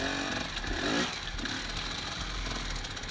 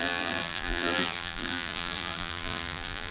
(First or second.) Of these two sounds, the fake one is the second